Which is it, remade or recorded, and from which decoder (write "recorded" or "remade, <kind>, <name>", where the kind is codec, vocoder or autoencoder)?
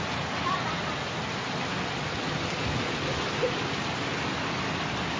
recorded